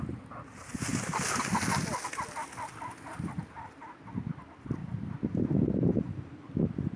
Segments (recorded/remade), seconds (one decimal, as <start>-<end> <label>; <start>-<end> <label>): 0.0-4.8 recorded; 4.8-6.3 remade; 6.3-7.0 recorded